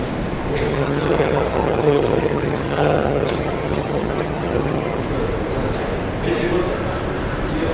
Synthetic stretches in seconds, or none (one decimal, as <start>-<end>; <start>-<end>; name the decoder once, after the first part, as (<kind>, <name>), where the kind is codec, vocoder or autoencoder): 0.7-5.0 (vocoder, HiFi-GAN)

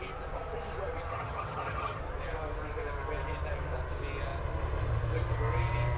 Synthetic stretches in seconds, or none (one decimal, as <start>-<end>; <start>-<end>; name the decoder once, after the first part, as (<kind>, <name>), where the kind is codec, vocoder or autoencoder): 1.1-2.0 (vocoder, HiFi-GAN)

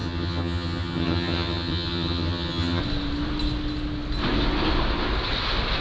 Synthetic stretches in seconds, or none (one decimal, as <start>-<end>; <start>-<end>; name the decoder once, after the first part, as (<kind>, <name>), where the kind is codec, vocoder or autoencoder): 0.0-2.8 (vocoder, HiFi-GAN)

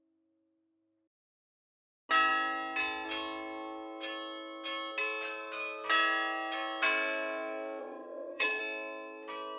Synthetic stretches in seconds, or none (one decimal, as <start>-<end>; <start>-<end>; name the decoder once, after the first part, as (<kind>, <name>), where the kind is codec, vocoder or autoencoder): 7.8-8.6 (vocoder, HiFi-GAN)

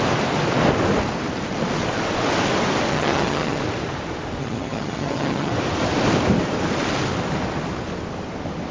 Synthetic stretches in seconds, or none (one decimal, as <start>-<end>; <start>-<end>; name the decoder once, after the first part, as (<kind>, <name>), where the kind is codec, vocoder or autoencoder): 2.9-3.6 (vocoder, HiFi-GAN); 4.4-5.5